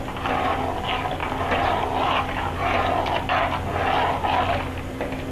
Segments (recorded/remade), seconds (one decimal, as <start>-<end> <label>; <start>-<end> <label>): 0.0-5.3 recorded